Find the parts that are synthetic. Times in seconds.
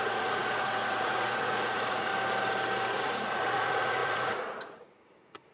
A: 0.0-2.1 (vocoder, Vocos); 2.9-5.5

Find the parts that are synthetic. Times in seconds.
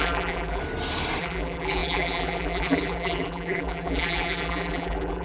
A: 0.0-0.6 (vocoder, BigVGAN v2); 1.2-5.2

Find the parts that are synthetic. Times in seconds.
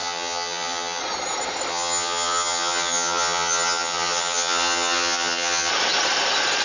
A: 0.0-1.0 (vocoder, HiFi-GAN); 1.7-5.7